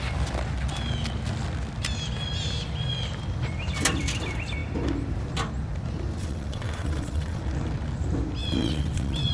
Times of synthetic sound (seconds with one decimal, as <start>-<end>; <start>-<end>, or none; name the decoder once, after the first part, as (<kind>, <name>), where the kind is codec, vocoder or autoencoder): 6.2-7.4 (vocoder, WaveNeXt); 8.4-9.3